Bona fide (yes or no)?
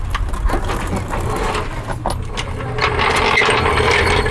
yes